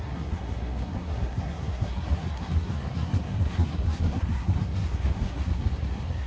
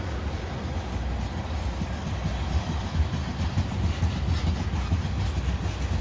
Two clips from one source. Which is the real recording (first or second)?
second